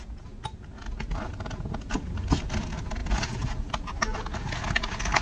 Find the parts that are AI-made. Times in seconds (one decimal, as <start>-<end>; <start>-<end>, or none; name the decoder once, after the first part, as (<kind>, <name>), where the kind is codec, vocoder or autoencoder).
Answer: none